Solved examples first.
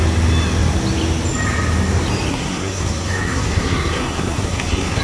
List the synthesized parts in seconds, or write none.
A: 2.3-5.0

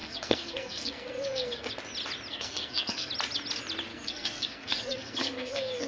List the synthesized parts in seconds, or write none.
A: 0.0-1.7; 2.3-3.1; 3.9-5.9

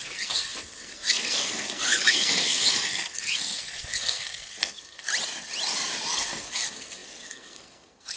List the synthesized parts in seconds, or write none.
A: 0.0-5.1; 6.1-8.2

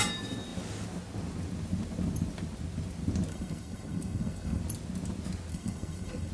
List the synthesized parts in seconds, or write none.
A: 3.3-4.6; 5.5-6.3

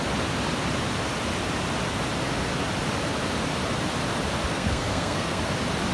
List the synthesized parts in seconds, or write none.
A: 4.5-5.4

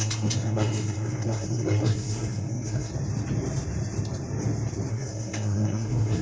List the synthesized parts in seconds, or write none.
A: 0.0-2.9; 4.9-6.2